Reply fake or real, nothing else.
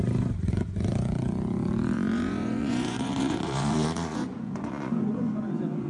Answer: fake